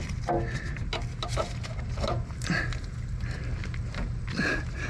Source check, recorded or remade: recorded